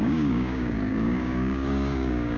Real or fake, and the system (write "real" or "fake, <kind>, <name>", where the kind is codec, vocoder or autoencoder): fake, codec, DAC